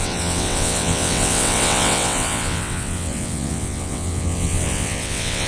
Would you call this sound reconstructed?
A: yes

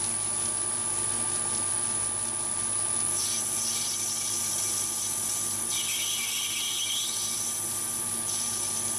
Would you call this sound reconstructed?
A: no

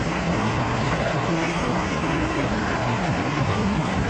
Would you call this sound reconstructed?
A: yes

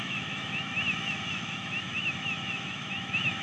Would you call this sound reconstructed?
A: yes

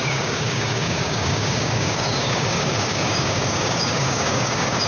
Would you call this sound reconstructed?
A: yes